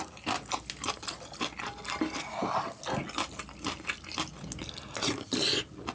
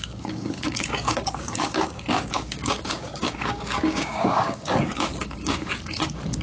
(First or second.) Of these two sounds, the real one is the first